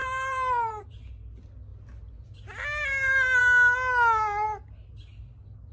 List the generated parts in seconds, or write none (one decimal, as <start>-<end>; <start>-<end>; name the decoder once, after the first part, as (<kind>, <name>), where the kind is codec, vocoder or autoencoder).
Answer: 0.0-1.1 (vocoder, BigVGAN v2)